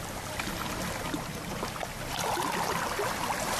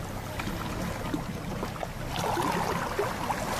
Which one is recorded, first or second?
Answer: second